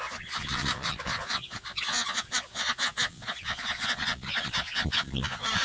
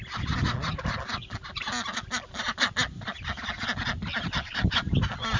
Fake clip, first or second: first